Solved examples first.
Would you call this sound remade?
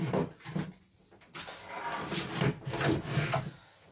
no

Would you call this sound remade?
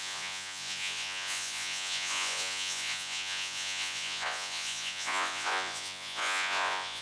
yes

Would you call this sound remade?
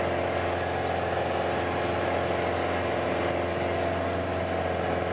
no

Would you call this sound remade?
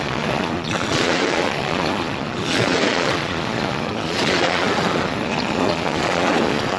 yes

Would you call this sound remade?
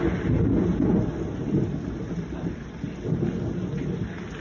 no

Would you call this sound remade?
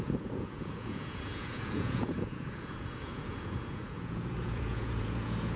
yes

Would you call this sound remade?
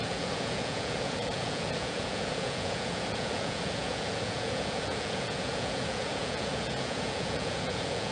yes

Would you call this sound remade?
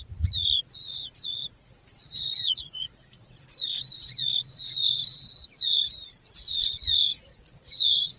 yes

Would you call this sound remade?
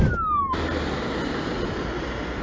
no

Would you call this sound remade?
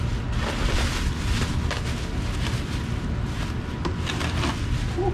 no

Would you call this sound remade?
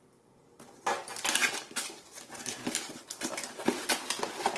no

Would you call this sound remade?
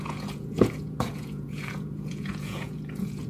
yes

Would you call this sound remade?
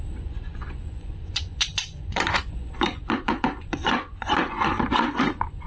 yes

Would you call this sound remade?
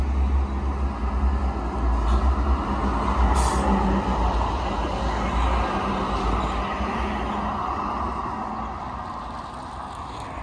no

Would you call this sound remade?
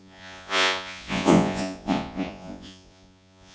yes